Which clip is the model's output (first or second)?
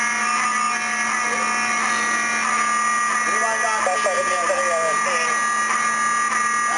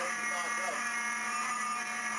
second